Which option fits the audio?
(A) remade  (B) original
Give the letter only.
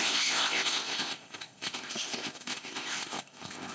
A